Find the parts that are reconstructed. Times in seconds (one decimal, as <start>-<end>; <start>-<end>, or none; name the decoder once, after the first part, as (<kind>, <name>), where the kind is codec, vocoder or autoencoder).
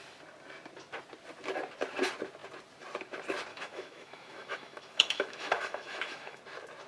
3.5-6.4 (autoencoder, DAC-VAE)